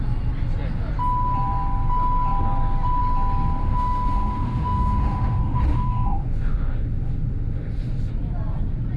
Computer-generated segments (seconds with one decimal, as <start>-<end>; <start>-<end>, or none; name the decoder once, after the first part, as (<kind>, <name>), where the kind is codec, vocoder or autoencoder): 3.6-8.1 (autoencoder, DAC-VAE)